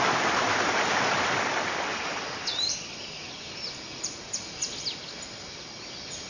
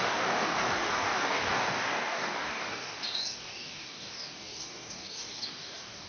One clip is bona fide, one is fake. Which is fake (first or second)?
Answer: second